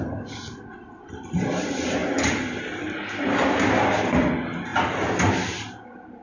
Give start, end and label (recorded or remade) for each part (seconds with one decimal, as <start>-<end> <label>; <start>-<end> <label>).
0.0-2.0 recorded; 2.0-3.0 remade; 3.0-6.2 recorded